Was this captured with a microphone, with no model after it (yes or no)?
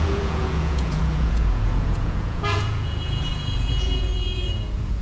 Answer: no